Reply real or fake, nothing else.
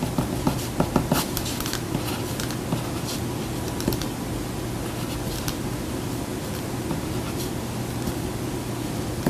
real